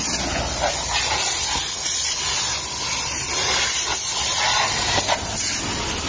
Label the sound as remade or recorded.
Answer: recorded